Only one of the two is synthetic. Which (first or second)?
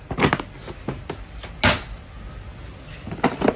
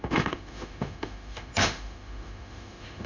second